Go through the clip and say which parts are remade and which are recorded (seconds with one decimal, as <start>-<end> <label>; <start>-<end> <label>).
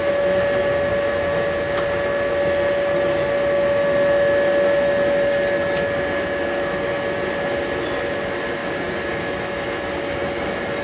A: 0.0-10.8 recorded